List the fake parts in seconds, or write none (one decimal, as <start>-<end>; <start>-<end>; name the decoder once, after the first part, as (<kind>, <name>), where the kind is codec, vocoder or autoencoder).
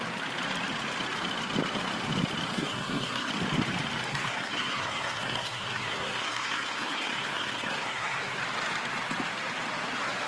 2.5-3.3 (codec, SNAC); 4.1-8.3